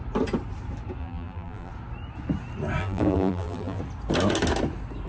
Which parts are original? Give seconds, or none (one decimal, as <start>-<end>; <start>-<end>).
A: 0.0-1.0; 1.7-2.8; 3.8-5.1